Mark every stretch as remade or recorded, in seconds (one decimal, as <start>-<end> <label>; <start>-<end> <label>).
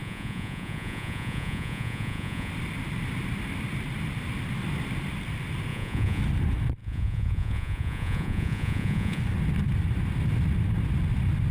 0.0-2.5 remade; 2.5-5.7 recorded; 5.7-6.2 remade; 6.2-6.8 recorded; 6.8-9.2 remade; 9.2-11.5 recorded